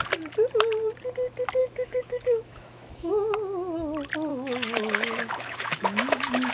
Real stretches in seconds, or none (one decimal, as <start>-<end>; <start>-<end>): 0.0-1.6; 3.1-4.3